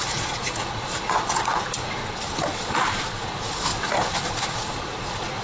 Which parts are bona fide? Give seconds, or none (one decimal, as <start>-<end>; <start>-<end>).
2.0-3.2; 3.7-4.5